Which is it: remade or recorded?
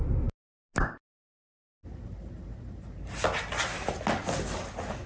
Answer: recorded